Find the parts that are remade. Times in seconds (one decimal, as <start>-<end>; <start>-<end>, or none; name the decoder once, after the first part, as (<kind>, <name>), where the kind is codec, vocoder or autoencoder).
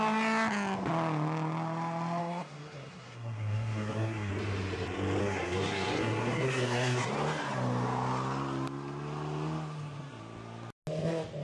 2.2-4.3 (codec, SNAC); 5.2-7.1